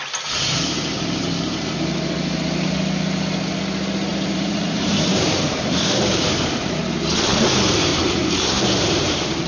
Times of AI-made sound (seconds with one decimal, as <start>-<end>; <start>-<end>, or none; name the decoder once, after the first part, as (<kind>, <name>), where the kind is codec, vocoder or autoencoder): 4.1-6.8 (vocoder, BigVGAN v2); 7.9-9.5

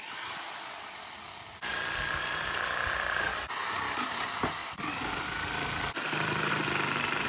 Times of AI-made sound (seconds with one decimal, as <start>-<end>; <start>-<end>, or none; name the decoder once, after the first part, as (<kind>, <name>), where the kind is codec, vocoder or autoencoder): 1.7-2.9 (vocoder, BigVGAN v2); 3.6-4.1; 4.6-6.5

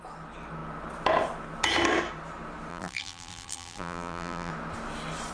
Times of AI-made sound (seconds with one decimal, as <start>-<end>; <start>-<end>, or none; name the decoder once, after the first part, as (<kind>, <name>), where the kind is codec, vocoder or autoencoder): 2.7-4.5 (vocoder, BigVGAN v2)

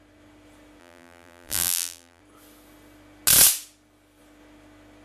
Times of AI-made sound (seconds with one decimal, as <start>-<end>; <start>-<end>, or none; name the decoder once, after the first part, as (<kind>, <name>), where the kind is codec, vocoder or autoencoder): 0.8-2.2 (vocoder, BigVGAN v2)

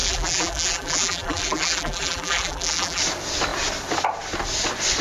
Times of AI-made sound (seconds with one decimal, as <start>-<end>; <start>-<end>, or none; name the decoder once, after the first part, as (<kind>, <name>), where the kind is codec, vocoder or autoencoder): 0.0-3.0 (vocoder, BigVGAN v2)